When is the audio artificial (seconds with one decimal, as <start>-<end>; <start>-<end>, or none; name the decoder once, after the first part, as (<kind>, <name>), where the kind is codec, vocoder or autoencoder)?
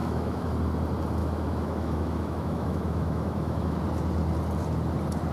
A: 0.0-0.5 (autoencoder, DAC-VAE); 1.2-3.8